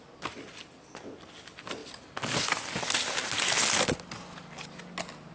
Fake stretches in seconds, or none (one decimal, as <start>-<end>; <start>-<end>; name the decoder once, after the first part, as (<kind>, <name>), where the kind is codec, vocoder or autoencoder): none